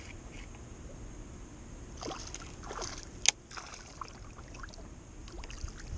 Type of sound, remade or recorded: recorded